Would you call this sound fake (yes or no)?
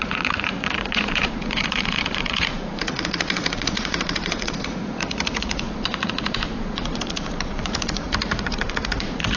yes